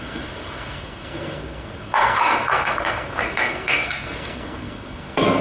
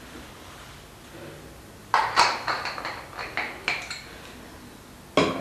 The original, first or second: second